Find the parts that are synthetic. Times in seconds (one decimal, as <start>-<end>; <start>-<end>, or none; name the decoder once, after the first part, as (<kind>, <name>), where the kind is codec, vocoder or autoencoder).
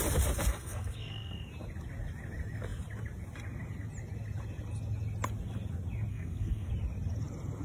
0.5-1.5 (codec, SNAC); 6.1-6.7